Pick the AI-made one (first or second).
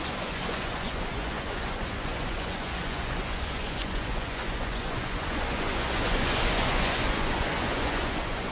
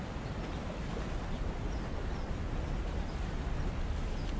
first